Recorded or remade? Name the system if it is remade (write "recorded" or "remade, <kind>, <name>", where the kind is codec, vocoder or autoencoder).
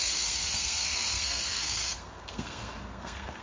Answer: remade, codec, SNAC